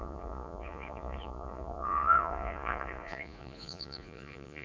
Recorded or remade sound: remade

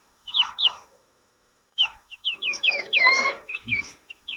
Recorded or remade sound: remade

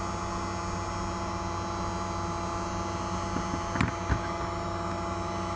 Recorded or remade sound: recorded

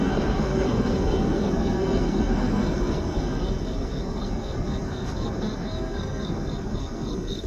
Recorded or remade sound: remade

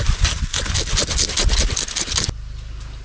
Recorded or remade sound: recorded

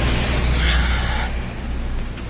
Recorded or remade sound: recorded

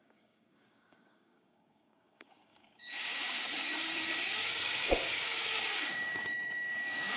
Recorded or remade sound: remade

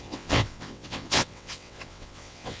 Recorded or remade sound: remade